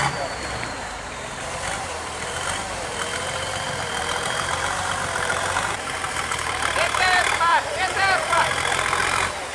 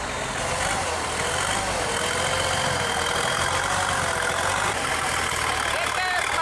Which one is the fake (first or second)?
first